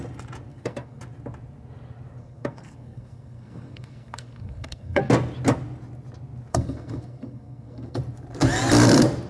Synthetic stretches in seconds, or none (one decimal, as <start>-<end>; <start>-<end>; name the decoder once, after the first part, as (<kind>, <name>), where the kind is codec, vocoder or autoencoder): 0.5-1.0 (codec, SNAC); 2.2-5.0; 6.5-8.0